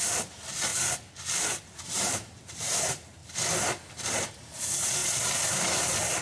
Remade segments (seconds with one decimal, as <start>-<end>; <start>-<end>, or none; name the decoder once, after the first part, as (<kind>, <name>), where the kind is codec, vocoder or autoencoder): 0.0-0.7 (vocoder, BigVGAN v2); 1.6-3.2; 4.3-5.0; 5.5-6.2